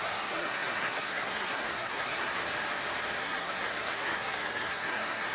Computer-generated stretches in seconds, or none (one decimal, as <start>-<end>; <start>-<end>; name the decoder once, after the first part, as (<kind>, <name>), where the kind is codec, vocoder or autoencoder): 0.0-2.4 (codec, SNAC); 3.2-5.3